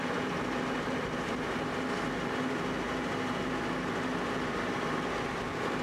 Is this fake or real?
real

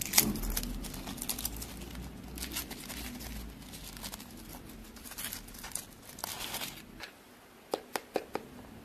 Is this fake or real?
real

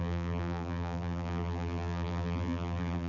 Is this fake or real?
fake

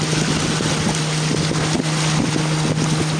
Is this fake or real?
real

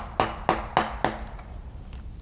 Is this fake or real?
real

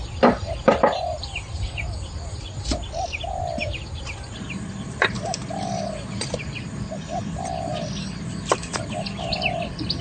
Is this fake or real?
fake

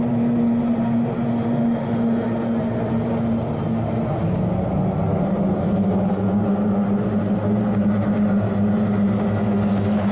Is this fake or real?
real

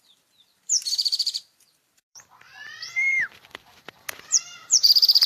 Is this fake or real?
fake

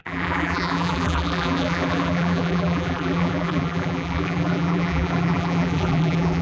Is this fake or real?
fake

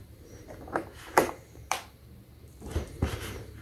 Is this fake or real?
fake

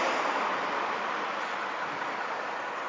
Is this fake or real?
fake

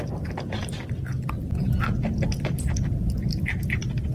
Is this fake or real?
real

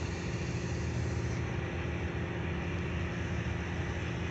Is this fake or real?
real